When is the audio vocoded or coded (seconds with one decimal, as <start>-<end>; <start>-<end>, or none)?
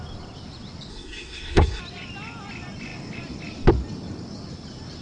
0.9-1.8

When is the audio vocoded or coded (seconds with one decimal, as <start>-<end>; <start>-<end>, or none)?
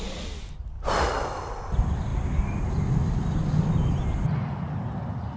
none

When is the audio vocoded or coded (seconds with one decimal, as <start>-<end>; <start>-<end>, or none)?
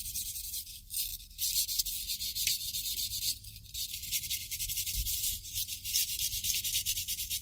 none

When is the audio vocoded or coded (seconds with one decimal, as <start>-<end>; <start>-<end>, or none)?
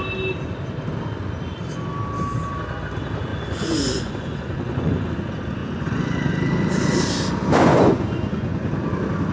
3.3-5.1; 5.6-6.3; 7.4-8.7